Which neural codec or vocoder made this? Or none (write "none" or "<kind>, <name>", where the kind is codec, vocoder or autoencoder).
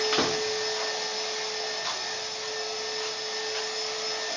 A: none